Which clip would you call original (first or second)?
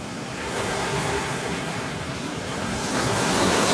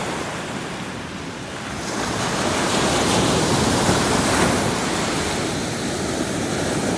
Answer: second